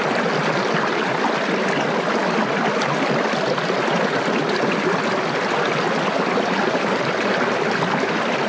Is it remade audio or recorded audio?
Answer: recorded